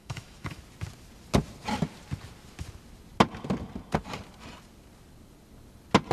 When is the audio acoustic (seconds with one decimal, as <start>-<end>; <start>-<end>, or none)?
0.6-6.1